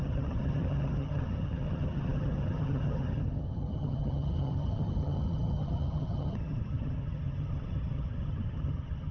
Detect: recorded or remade remade